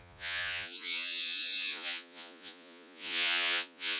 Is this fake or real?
fake